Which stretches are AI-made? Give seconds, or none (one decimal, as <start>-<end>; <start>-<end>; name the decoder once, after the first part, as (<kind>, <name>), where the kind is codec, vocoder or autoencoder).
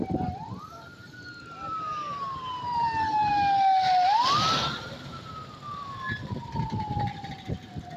1.0-3.3 (vocoder, BigVGAN v2); 5.8-7.3